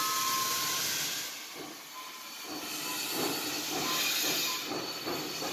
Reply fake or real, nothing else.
real